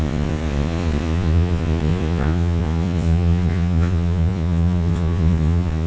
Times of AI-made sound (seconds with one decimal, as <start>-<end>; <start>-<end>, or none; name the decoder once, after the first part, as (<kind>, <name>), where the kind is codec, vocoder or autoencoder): 0.0-5.9 (vocoder, Vocos)